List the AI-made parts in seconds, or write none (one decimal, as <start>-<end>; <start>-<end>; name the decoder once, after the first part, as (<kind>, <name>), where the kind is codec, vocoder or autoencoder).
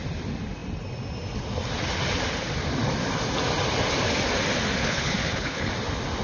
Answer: 4.8-5.7 (codec, HILCodec)